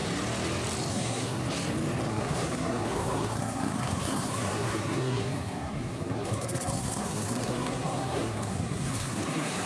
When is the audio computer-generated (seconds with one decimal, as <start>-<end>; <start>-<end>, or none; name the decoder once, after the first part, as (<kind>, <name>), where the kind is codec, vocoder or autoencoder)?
0.9-1.4 (codec, SNAC); 2.1-9.7